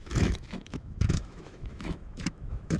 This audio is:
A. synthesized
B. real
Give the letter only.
A